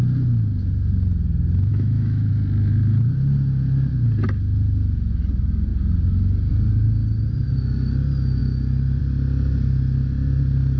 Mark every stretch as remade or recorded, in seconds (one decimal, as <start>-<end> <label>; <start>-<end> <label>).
0.0-1.7 recorded; 1.7-2.3 remade; 2.3-10.8 recorded